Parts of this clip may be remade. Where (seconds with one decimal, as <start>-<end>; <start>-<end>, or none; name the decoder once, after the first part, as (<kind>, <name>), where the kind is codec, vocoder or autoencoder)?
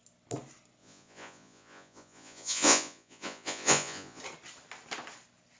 0.8-4.2 (vocoder, Vocos)